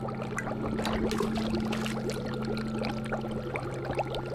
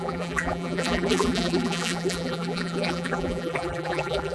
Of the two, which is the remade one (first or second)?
second